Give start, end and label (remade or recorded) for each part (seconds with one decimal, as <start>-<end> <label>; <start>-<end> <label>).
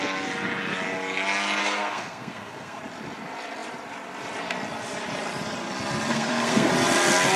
0.0-1.6 recorded; 1.6-2.8 remade; 2.8-6.1 recorded; 6.1-6.7 remade; 6.7-7.4 recorded